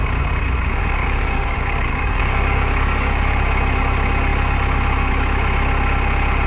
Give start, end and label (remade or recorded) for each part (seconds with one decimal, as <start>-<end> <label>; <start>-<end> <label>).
0.0-1.0 recorded; 1.0-3.4 remade; 3.4-6.5 recorded